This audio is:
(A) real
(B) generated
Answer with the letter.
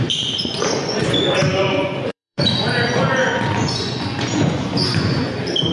B